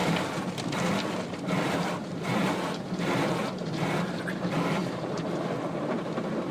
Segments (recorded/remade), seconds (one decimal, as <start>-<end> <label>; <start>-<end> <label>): 0.0-3.9 remade; 3.9-4.8 recorded; 4.8-6.5 remade